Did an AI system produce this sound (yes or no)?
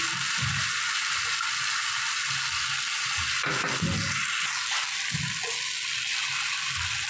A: no